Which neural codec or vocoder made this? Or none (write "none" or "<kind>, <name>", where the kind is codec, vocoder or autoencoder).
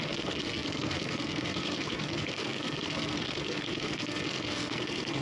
codec, SNAC